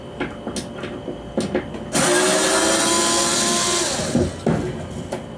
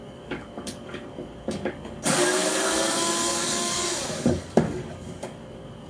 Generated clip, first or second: second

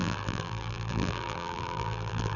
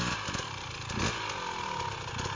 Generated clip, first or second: first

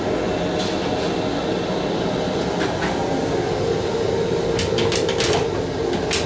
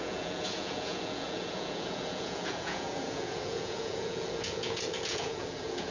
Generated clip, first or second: second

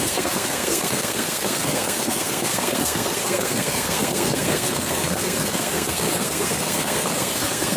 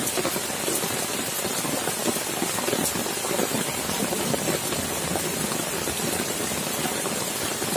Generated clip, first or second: first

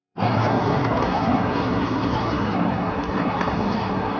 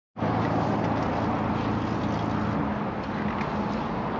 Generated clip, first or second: first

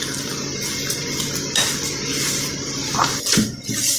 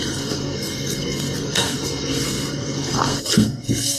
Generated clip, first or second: second